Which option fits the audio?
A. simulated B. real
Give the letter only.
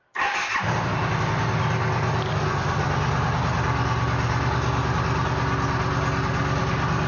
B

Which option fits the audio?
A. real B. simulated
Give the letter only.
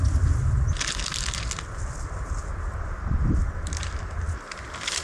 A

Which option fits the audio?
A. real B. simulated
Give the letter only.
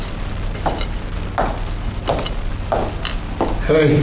A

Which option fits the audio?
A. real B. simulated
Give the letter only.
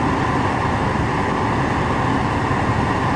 A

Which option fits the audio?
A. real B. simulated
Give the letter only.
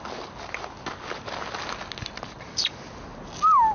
A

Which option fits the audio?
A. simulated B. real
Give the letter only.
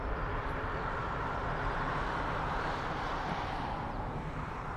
A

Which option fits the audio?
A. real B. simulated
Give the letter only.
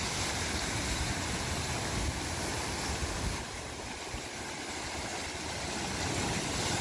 A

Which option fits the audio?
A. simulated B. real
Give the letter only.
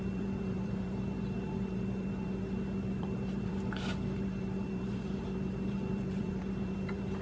A